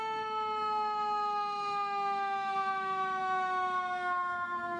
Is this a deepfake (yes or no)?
yes